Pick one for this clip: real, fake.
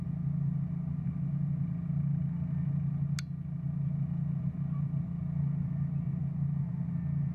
real